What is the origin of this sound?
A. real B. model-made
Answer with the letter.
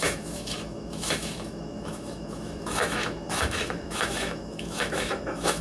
B